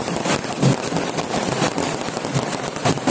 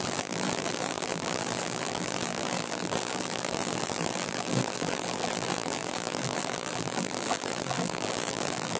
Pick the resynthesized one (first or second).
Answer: second